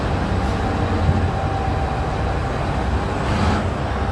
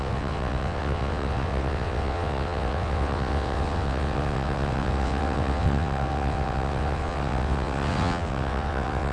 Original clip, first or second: first